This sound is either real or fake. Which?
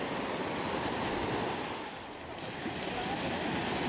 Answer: real